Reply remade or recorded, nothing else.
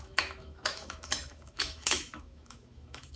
remade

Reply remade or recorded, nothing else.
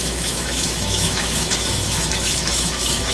remade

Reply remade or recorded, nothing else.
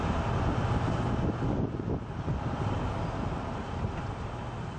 recorded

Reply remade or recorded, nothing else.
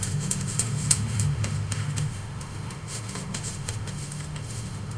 remade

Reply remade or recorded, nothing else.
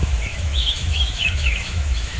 remade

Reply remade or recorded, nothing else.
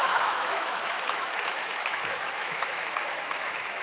remade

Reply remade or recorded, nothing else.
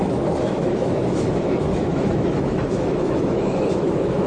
remade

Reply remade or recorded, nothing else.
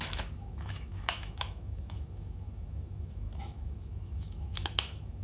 remade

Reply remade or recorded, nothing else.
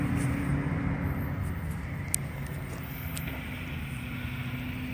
recorded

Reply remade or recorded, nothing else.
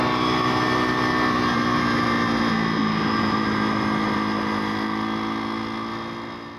recorded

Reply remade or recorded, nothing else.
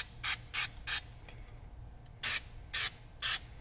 recorded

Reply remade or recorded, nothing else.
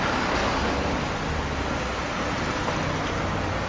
recorded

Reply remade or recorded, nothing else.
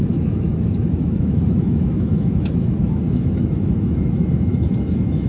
remade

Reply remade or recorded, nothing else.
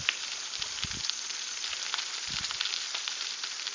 recorded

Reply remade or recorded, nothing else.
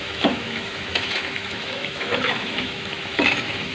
remade